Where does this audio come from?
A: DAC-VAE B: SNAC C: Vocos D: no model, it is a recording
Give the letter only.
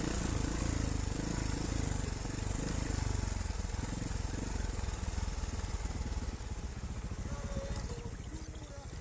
D